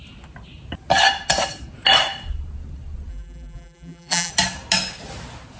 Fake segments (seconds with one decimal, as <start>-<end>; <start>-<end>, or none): 3.1-4.3